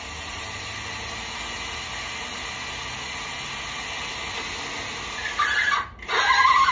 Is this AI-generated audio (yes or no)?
no